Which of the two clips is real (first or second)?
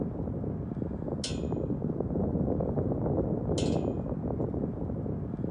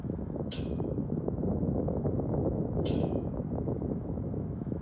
first